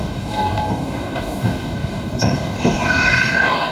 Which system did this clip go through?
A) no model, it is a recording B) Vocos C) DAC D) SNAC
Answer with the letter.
C